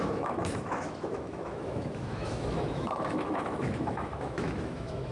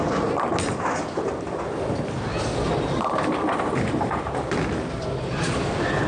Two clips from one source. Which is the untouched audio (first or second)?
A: second